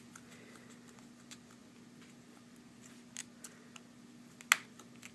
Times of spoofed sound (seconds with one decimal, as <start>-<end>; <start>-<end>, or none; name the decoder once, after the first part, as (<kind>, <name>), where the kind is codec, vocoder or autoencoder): none